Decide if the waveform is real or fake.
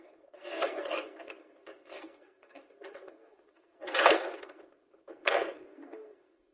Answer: fake